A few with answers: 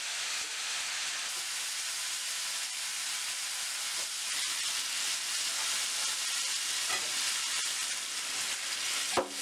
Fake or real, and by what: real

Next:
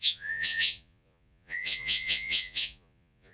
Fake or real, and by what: fake, vocoder, Vocos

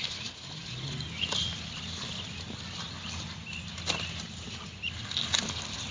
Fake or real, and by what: real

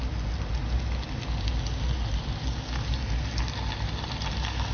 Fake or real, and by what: real